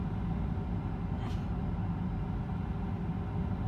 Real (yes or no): yes